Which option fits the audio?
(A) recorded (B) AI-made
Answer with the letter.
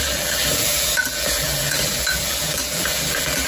B